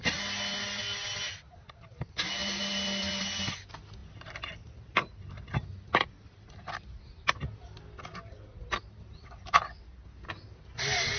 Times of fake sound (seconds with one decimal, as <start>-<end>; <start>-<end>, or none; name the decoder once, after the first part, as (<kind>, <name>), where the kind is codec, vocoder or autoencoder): none